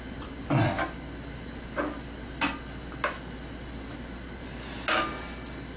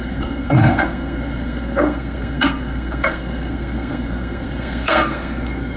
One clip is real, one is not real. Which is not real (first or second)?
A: second